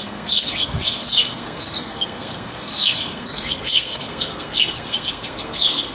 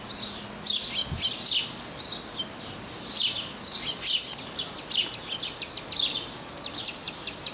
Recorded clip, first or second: second